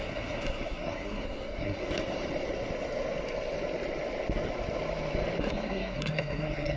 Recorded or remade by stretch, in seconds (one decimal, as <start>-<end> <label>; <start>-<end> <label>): 0.0-1.8 remade; 1.8-5.4 recorded; 5.4-6.8 remade